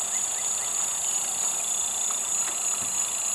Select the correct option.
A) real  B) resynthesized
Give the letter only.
B